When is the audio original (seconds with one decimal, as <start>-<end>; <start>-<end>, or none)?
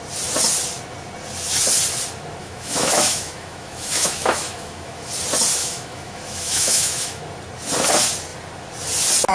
0.0-2.4; 5.1-5.6; 7.2-9.3